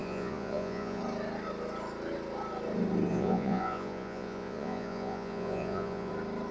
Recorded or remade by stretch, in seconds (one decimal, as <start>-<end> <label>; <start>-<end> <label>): 0.0-1.0 remade; 1.0-3.1 recorded; 3.1-6.1 remade; 6.1-6.5 recorded